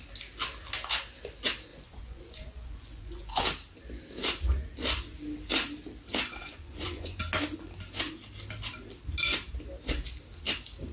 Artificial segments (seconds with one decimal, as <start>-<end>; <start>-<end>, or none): 1.7-3.4; 6.4-7.2